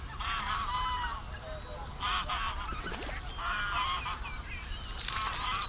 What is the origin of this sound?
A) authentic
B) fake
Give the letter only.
A